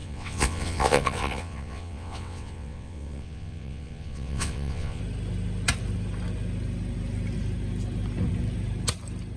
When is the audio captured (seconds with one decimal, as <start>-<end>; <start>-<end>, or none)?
5.0-9.4